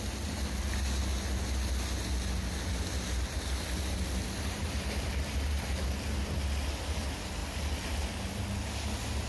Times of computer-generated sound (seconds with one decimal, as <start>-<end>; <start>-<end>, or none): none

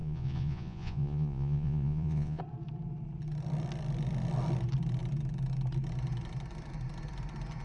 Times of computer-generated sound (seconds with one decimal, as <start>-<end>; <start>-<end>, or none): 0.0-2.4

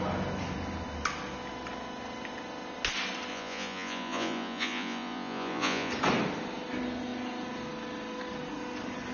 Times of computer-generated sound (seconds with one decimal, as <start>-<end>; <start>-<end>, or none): 3.3-5.9

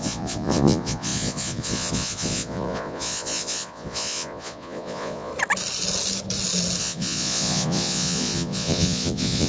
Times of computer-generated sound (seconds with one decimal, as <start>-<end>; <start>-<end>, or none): 0.0-5.3; 6.8-9.5